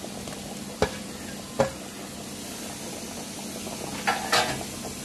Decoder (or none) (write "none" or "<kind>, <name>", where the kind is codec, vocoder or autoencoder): none